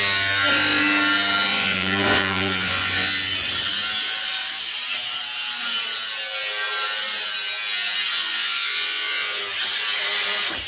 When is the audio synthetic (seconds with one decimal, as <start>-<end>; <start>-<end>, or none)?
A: 1.5-3.1; 8.1-9.4